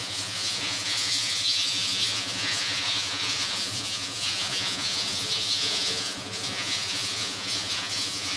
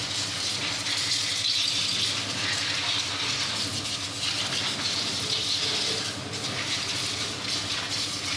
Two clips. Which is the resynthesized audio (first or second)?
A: first